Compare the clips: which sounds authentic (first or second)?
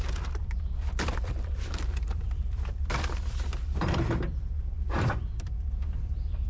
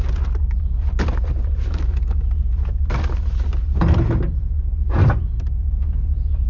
second